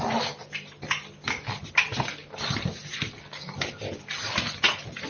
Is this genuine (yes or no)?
yes